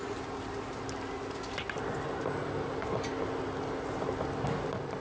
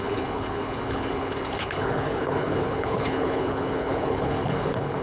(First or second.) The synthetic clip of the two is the second